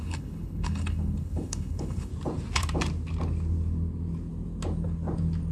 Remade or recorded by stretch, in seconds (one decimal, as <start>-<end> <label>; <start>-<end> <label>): 0.0-2.1 remade; 2.1-5.5 recorded